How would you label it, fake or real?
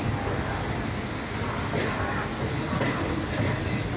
real